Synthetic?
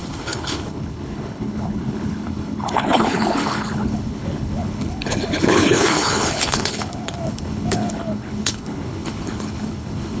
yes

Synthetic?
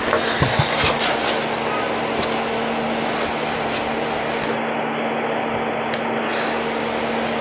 no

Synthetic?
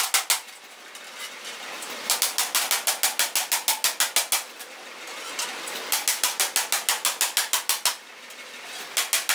no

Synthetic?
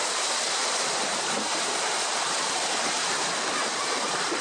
yes